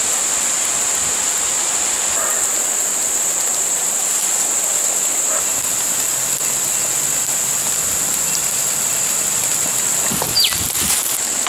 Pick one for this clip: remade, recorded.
recorded